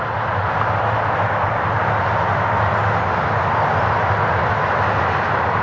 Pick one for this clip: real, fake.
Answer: real